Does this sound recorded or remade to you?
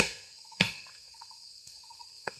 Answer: remade